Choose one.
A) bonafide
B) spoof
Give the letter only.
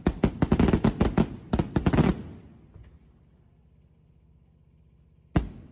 A